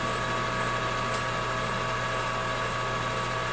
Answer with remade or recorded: recorded